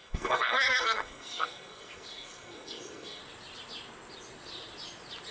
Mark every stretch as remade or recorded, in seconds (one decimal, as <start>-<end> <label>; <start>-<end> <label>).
0.0-3.2 remade; 3.2-5.3 recorded